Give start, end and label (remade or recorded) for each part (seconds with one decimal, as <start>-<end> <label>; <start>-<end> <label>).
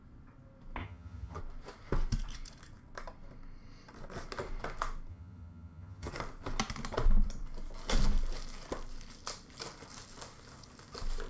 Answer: 0.0-0.8 recorded; 0.8-1.4 remade; 1.4-5.1 recorded; 5.1-6.1 remade; 6.1-11.3 recorded